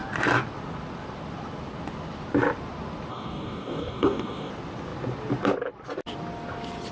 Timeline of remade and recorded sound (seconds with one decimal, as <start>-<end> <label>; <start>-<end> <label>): 0.0-3.1 recorded; 3.1-4.5 remade; 4.5-6.9 recorded